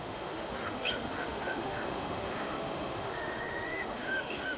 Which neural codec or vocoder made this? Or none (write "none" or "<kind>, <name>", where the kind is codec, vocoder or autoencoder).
autoencoder, DAC-VAE